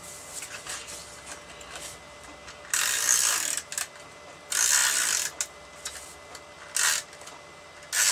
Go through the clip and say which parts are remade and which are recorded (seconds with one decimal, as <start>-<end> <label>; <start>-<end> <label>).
0.0-8.1 recorded